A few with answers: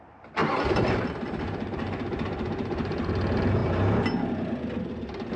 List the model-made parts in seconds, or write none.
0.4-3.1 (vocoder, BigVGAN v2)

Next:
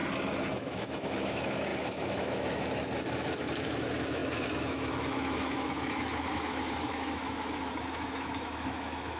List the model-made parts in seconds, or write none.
0.7-9.2 (autoencoder, DAC-VAE)

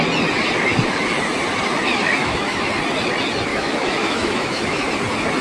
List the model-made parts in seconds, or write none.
1.9-2.7 (autoencoder, DAC-VAE); 3.5-4.9

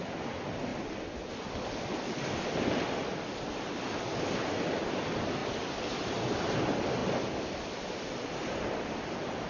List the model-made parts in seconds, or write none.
none

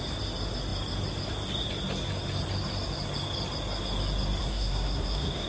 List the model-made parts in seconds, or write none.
4.4-5.5 (codec, SNAC)

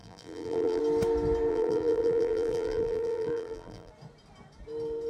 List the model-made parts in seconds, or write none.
0.0-0.8 (vocoder, BigVGAN v2); 1.5-3.9